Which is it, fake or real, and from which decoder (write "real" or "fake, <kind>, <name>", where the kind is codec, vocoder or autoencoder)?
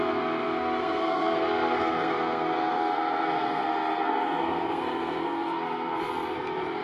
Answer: fake, codec, SNAC